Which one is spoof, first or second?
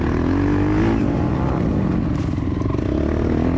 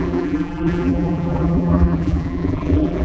second